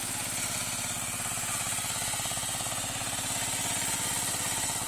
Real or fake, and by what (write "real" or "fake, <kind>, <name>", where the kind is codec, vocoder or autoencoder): real